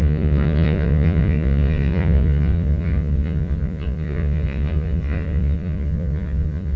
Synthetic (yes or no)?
yes